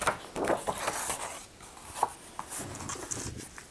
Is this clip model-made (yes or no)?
no